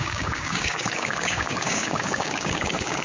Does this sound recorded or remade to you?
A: remade